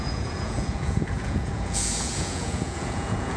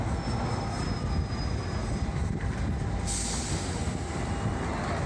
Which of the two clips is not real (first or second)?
first